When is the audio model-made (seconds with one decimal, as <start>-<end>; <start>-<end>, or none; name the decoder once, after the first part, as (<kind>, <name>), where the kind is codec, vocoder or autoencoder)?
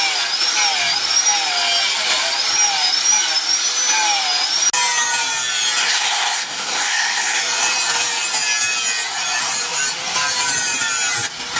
5.8-7.4 (codec, SNAC)